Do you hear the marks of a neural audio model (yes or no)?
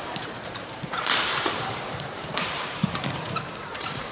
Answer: yes